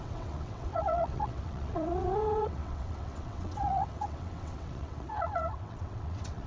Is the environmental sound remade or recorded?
remade